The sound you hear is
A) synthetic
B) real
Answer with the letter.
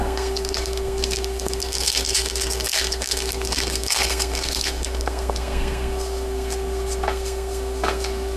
A